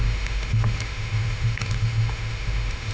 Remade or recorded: remade